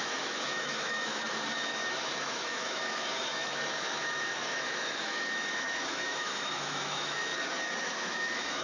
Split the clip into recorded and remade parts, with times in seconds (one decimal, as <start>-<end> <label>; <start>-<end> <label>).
0.0-7.3 remade; 7.3-7.8 recorded; 7.8-8.6 remade